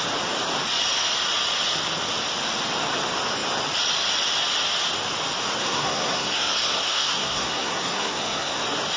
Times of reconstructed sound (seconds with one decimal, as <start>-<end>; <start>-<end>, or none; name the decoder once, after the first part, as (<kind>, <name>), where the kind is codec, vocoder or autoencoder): 5.6-8.6 (codec, SNAC)